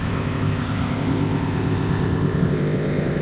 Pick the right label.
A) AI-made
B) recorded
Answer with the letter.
A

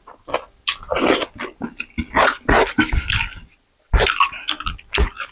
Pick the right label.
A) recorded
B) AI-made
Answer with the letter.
A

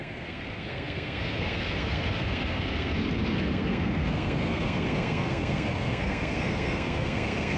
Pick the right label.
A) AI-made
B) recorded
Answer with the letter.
A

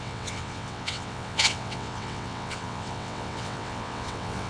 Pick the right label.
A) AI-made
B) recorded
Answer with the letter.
A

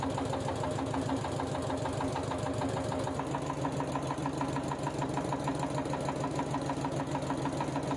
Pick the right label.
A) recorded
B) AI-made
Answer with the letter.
A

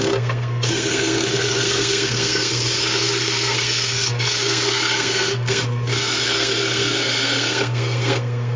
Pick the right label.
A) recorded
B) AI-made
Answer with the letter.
B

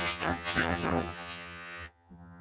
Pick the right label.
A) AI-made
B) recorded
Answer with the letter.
A